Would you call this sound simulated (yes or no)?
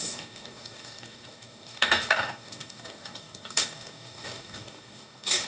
yes